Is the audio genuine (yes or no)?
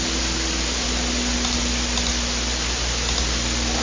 yes